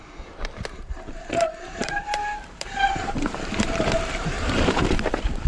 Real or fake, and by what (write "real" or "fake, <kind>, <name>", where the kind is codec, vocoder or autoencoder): fake, vocoder, BigVGAN v2